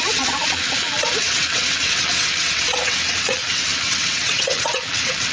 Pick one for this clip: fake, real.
fake